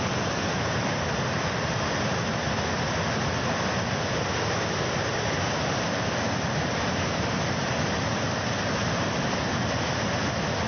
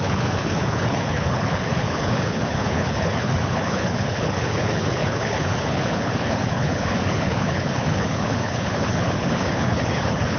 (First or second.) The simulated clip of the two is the second